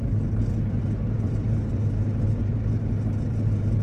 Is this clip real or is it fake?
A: fake